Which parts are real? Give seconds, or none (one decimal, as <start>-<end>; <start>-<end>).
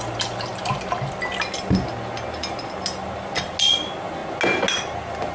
0.0-5.3